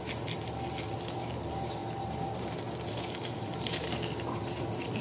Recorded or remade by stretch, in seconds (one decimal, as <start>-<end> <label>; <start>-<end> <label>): 0.0-5.0 recorded